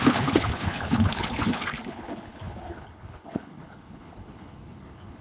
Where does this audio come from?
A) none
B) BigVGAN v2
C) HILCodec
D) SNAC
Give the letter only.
C